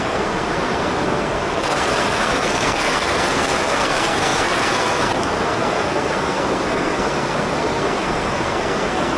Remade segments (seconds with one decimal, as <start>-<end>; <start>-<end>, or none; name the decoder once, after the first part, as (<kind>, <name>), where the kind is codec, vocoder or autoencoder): 0.0-9.2 (codec, SNAC)